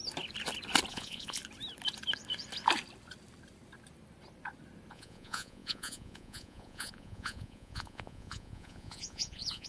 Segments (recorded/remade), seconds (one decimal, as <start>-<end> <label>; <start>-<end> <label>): 0.0-0.9 recorded; 0.9-1.4 remade; 1.4-4.9 recorded; 4.9-9.7 remade